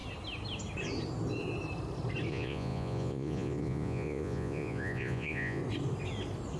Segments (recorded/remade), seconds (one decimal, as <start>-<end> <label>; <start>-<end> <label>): 0.0-2.3 recorded; 2.3-5.6 remade; 5.6-6.6 recorded